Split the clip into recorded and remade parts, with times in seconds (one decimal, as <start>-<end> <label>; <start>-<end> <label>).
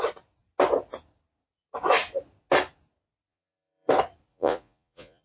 0.0-3.3 recorded; 3.3-3.9 remade; 3.9-4.3 recorded; 4.3-5.2 remade